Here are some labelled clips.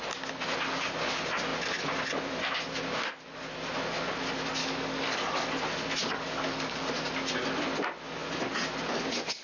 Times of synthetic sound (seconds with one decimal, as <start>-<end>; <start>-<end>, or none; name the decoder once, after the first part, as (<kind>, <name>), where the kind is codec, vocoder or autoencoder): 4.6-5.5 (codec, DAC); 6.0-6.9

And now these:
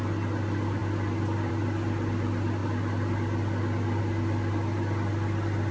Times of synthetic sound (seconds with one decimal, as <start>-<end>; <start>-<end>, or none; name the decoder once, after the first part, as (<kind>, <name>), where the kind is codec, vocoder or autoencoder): none

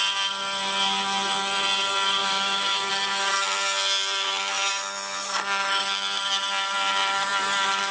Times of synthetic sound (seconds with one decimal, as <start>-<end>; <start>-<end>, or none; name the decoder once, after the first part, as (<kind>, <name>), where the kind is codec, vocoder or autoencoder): 2.2-2.9 (autoencoder, DAC-VAE)